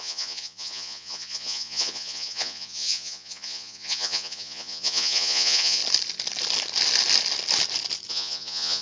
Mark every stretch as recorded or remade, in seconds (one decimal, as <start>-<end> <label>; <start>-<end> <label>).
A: 0.0-5.8 remade; 5.8-8.1 recorded; 8.1-8.8 remade